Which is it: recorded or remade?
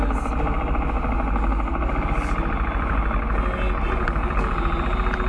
recorded